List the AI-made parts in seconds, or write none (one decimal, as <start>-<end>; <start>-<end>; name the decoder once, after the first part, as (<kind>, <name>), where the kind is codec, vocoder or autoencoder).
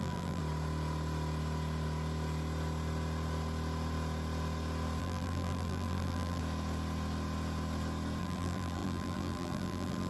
0.0-0.4 (vocoder, BigVGAN v2); 5.0-6.4; 8.2-10.1